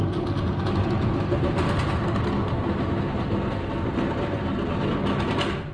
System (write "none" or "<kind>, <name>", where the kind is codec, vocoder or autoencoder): none